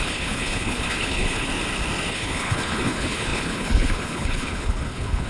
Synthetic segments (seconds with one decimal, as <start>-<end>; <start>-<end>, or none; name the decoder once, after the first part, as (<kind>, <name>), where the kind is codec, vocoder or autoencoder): 0.0-1.5 (codec, HILCodec); 2.1-5.3